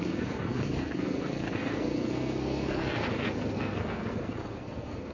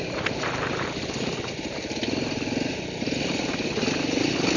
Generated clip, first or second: first